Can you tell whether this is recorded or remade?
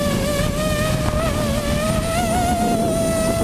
recorded